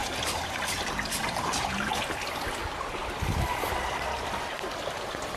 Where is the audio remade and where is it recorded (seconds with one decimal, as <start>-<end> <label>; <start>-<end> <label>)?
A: 0.0-1.9 remade; 1.9-5.0 recorded; 5.0-5.4 remade

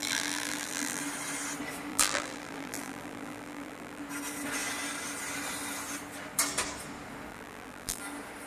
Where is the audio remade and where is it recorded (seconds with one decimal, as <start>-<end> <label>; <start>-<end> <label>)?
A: 0.0-1.0 remade; 1.0-1.9 recorded; 1.9-4.0 remade; 4.0-7.3 recorded; 7.3-8.0 remade; 8.0-8.5 recorded

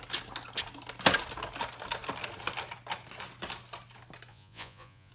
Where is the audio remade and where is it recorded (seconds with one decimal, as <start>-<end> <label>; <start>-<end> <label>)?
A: 0.0-4.3 recorded; 4.3-5.1 remade

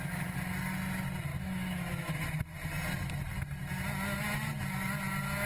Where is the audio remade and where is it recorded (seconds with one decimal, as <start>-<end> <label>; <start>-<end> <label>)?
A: 0.0-1.3 recorded; 1.3-2.4 remade; 2.4-5.5 recorded